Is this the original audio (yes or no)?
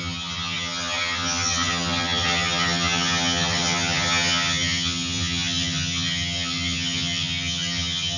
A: no